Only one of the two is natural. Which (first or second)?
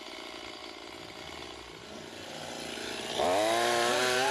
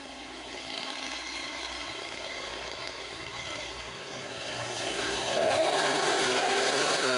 first